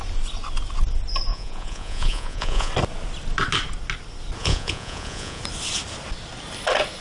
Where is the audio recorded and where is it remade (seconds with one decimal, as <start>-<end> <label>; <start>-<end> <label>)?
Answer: 0.0-1.3 recorded; 1.3-2.7 remade; 2.7-4.4 recorded; 4.4-5.4 remade; 5.4-7.0 recorded